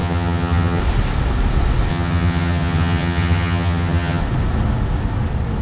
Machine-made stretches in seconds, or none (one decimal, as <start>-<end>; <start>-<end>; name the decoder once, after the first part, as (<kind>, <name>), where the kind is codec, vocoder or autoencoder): 0.0-0.8 (vocoder, HiFi-GAN); 1.9-4.2